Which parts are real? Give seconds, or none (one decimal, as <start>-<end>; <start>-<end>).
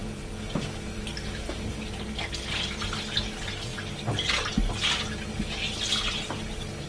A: 0.0-6.9